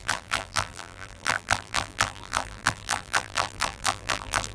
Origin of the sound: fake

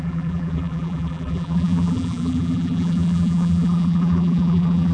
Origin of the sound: fake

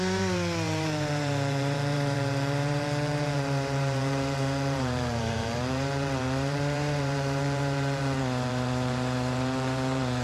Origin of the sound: fake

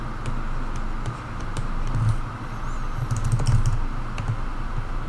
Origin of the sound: real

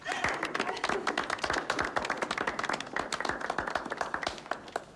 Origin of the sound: real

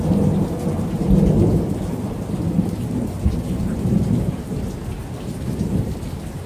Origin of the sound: real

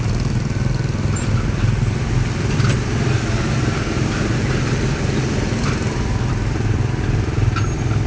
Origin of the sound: fake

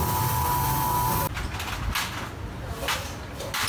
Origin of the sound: real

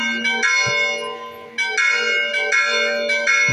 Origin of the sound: real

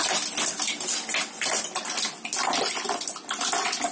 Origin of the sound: real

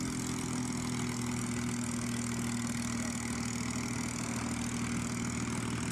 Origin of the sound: real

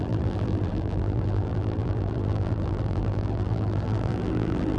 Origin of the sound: fake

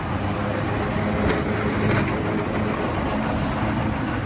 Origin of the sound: real